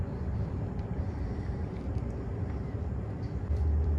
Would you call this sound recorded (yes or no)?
no